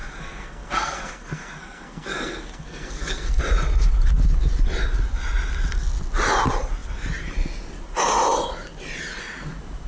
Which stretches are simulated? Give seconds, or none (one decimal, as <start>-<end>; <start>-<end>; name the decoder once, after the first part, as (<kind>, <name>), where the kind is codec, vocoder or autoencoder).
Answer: 0.0-3.4 (codec, SNAC)